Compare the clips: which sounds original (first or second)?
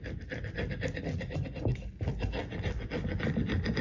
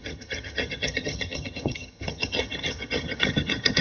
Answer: first